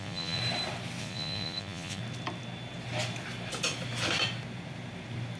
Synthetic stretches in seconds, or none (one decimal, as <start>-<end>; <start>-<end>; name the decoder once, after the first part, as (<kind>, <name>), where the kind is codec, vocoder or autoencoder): 0.0-0.4 (vocoder, Vocos); 1.0-2.0

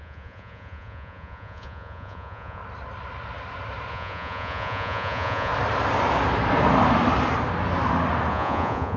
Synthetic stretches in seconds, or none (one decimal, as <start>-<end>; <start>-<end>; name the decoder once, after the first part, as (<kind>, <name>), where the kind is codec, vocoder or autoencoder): 0.0-2.6 (vocoder, Vocos); 3.9-5.5; 8.3-9.0

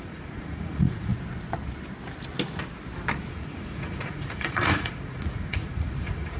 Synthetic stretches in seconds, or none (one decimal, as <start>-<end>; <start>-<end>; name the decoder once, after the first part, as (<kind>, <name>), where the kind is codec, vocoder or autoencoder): 0.0-1.1 (vocoder, Vocos); 3.3-6.4

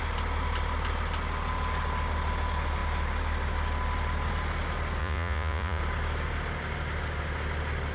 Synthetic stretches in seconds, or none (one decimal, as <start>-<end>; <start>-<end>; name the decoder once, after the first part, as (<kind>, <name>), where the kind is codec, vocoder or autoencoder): 5.0-5.8 (vocoder, Vocos)

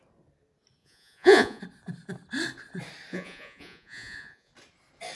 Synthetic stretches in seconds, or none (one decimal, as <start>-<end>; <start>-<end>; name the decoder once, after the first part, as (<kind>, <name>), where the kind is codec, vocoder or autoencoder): 0.8-1.6 (vocoder, Vocos); 3.1-4.5

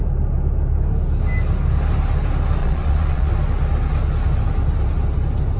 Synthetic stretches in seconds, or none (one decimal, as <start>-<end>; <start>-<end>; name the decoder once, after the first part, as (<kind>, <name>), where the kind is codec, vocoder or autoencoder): 2.6-3.3 (vocoder, Vocos)

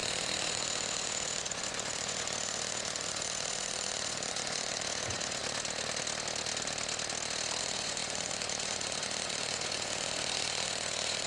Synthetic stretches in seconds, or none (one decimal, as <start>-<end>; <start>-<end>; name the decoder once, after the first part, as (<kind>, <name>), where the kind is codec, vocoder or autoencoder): 0.0-5.4 (vocoder, Vocos); 7.6-11.3

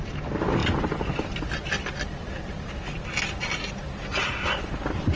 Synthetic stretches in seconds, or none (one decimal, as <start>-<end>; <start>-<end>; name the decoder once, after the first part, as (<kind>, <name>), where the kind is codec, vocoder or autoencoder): none